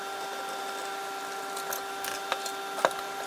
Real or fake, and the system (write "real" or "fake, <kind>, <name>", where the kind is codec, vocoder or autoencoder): real